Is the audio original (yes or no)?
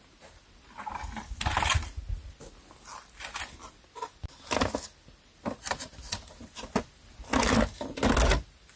yes